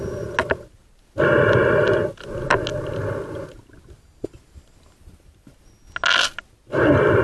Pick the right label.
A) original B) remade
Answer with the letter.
A